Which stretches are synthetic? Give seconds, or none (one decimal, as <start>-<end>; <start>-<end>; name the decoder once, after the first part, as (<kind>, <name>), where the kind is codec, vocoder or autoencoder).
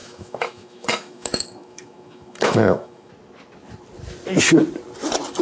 0.0-3.1 (autoencoder, DAC-VAE)